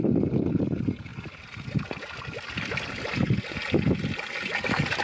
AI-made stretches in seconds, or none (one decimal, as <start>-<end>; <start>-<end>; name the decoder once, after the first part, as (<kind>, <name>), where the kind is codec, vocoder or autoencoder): none